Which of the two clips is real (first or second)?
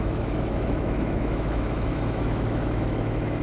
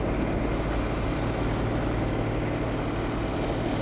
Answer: second